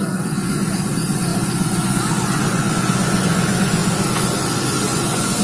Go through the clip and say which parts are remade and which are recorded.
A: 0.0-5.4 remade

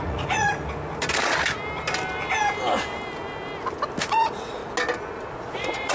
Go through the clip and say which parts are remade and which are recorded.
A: 0.0-0.5 remade; 0.5-4.0 recorded; 4.0-4.6 remade; 4.6-5.3 recorded; 5.3-5.9 remade

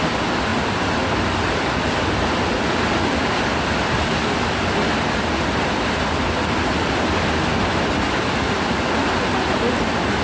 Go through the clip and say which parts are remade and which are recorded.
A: 0.0-10.2 recorded

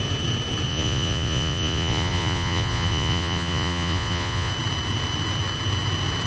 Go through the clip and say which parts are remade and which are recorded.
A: 0.0-0.7 recorded; 0.7-4.5 remade; 4.5-6.3 recorded

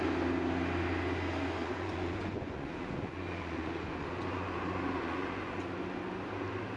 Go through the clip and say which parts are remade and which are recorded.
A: 0.0-1.6 recorded; 1.6-5.7 remade; 5.7-6.8 recorded

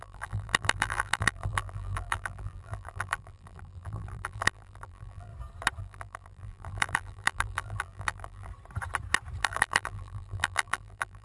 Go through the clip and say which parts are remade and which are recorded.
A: 0.0-5.3 remade; 5.3-5.8 recorded; 5.8-8.5 remade; 8.5-9.4 recorded; 9.4-11.2 remade